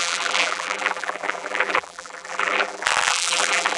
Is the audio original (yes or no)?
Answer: no